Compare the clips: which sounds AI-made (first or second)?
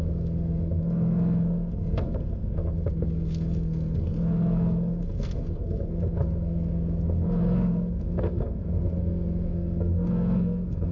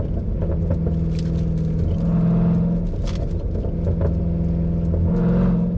first